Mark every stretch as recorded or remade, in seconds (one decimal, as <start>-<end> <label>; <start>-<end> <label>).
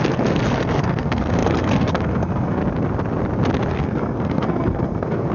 0.0-2.6 remade; 2.6-3.7 recorded; 3.7-5.3 remade